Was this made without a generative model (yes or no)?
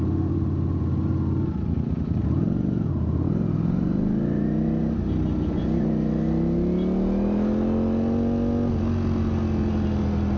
yes